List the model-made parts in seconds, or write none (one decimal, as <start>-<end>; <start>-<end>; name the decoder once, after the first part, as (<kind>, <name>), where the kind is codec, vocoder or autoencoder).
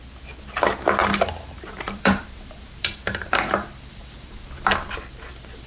1.0-4.4 (vocoder, BigVGAN v2)